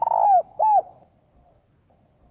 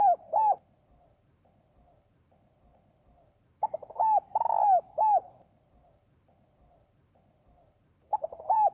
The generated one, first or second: second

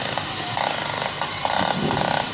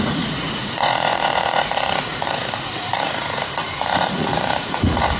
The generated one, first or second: second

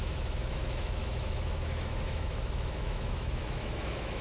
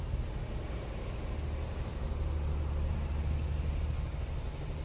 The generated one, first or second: first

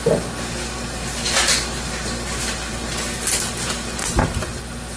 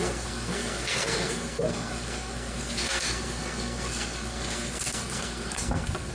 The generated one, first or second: second